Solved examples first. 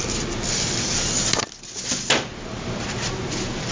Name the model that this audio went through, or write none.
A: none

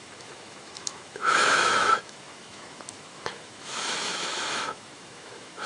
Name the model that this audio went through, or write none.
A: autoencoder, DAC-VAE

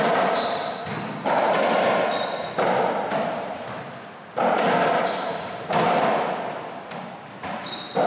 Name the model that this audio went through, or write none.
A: none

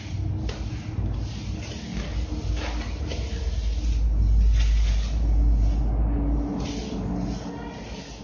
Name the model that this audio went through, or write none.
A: none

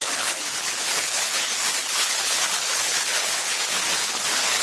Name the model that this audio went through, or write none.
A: codec, HILCodec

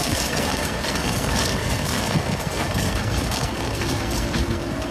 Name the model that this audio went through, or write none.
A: codec, SNAC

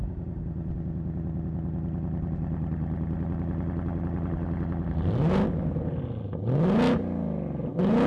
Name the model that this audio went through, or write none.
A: none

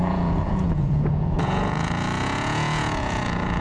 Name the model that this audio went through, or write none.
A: vocoder, Vocos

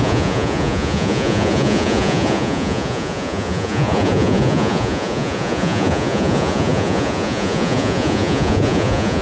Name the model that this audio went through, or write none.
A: vocoder, Vocos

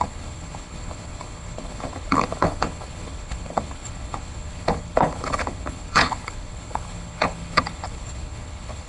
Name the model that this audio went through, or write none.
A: codec, HILCodec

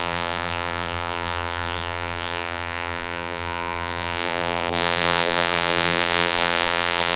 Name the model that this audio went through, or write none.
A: vocoder, BigVGAN v2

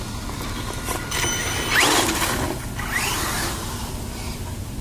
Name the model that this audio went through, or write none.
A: none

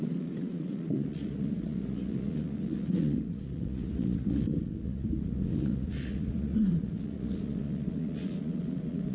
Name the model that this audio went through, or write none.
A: vocoder, Vocos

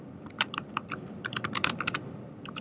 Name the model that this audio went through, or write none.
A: vocoder, BigVGAN v2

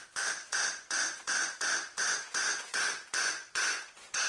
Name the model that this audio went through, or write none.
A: vocoder, Vocos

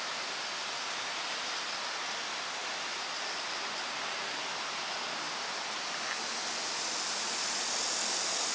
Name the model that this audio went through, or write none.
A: none